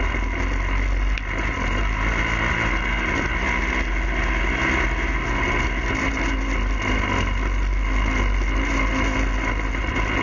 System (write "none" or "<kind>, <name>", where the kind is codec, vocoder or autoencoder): none